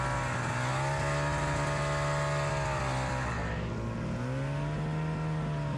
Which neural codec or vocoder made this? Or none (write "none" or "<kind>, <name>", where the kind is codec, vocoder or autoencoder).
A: none